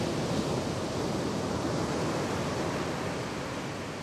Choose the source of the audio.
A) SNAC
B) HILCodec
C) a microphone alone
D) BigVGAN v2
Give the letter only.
C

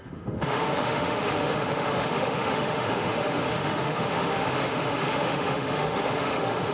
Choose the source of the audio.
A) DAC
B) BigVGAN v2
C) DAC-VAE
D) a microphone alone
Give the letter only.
C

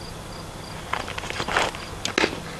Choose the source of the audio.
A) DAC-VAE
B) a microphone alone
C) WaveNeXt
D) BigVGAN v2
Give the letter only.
B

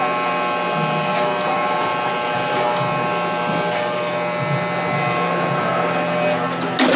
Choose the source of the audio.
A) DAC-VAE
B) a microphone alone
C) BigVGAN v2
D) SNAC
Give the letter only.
B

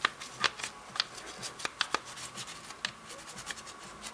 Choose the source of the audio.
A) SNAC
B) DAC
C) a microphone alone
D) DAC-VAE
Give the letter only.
C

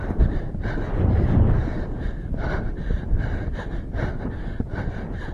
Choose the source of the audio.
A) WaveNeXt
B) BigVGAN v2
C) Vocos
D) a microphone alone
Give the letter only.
B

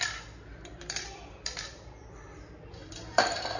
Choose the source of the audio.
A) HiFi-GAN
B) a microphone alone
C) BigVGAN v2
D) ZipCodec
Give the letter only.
C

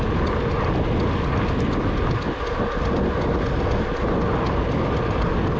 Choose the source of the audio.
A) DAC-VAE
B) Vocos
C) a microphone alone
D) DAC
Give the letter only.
C